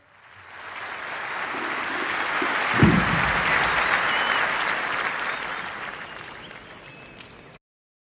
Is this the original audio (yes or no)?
yes